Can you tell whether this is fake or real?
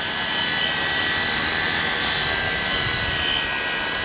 real